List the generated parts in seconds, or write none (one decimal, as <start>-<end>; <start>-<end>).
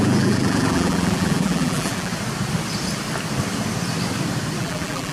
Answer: 0.0-2.1; 4.6-5.1